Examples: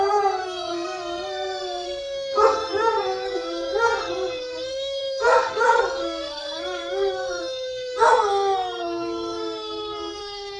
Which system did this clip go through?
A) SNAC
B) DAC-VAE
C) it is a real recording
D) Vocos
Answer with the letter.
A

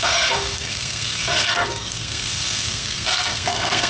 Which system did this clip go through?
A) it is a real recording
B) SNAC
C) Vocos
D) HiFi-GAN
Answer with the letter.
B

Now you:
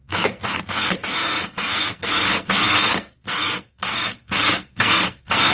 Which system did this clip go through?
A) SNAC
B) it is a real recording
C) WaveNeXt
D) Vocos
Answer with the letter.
A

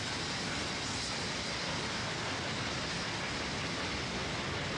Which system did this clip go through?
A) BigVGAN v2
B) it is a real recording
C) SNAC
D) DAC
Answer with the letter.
B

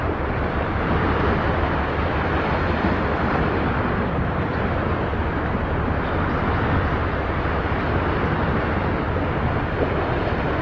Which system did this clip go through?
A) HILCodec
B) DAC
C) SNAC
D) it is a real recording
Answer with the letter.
D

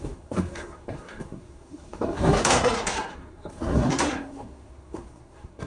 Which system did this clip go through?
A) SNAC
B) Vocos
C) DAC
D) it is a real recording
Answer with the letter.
A